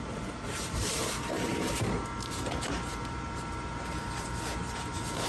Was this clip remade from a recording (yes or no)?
yes